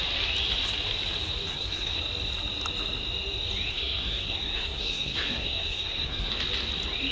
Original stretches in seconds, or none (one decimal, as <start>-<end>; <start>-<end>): 0.0-1.5; 2.0-3.7; 6.3-7.1